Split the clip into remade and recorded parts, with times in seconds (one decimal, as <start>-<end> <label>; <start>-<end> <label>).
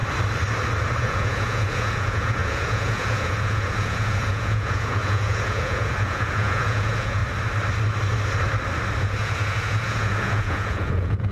0.0-1.0 recorded; 1.0-7.2 remade; 7.2-9.0 recorded; 9.0-11.3 remade